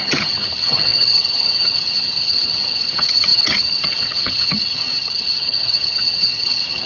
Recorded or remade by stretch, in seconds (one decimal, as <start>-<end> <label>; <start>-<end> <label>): 0.0-6.9 remade